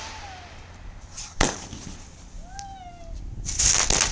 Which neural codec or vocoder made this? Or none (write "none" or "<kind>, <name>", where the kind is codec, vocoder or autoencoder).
none